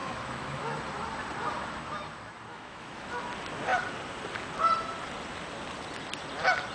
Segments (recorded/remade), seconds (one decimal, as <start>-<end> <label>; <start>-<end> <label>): 0.0-0.8 remade; 0.8-2.5 recorded; 2.5-3.1 remade; 3.1-6.7 recorded